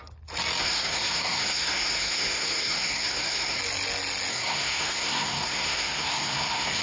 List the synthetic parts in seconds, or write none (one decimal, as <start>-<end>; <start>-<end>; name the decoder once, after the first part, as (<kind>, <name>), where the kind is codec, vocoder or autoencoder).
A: 0.6-3.6 (codec, SNAC); 4.3-6.8